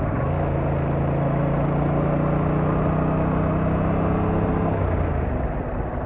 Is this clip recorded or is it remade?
recorded